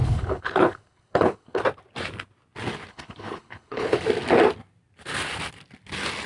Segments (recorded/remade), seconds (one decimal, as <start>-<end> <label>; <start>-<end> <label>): 0.0-1.6 remade; 1.6-2.9 recorded; 2.9-4.0 remade; 4.0-6.3 recorded